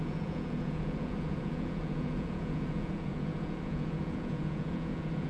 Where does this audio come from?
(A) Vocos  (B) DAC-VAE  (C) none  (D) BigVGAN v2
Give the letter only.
A